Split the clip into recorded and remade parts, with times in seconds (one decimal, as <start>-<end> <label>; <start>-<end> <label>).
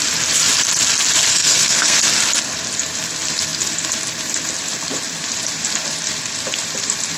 0.0-1.3 recorded; 1.3-2.0 remade; 2.0-7.2 recorded